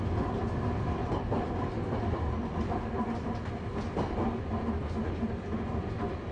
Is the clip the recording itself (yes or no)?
yes